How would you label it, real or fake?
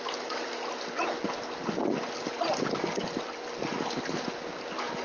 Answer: real